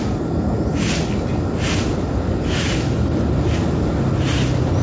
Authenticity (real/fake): real